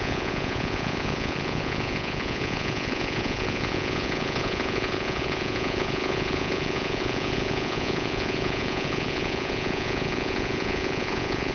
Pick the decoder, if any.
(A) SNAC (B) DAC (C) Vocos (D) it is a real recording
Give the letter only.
C